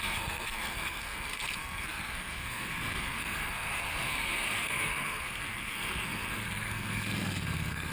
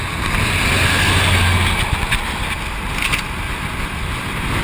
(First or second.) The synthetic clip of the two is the first